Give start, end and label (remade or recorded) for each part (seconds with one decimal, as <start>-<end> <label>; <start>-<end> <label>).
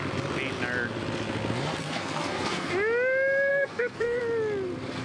0.0-1.8 recorded; 1.8-2.7 remade; 2.7-3.5 recorded; 3.5-4.2 remade; 4.2-5.0 recorded